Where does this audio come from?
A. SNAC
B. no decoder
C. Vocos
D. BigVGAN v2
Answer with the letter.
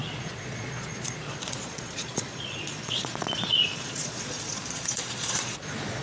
C